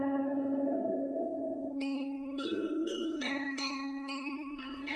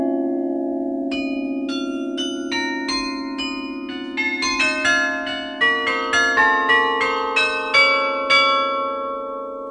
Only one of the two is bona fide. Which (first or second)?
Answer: second